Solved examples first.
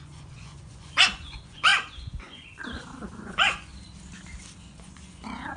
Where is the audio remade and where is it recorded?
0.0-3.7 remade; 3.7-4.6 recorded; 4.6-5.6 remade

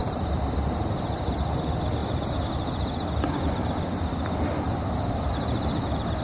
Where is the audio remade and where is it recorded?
0.0-1.3 recorded; 1.3-2.0 remade; 2.0-5.3 recorded; 5.3-6.2 remade

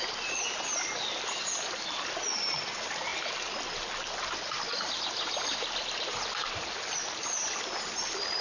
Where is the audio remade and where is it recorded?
0.0-8.4 recorded

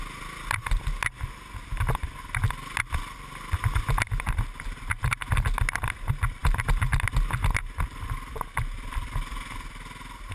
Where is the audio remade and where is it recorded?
0.0-10.3 recorded

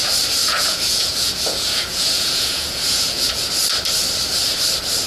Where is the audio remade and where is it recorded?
0.0-0.4 recorded; 0.4-3.5 remade; 3.5-5.1 recorded

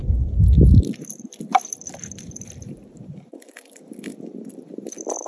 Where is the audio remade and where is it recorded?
0.0-5.3 recorded

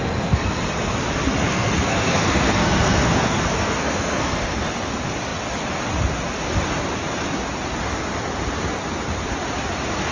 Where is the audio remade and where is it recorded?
0.0-0.6 remade; 0.6-1.4 recorded; 1.4-4.7 remade; 4.7-10.1 recorded

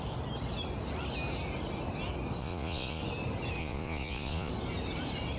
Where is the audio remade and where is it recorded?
0.0-2.4 recorded; 2.4-3.0 remade; 3.0-3.6 recorded; 3.6-4.5 remade; 4.5-5.4 recorded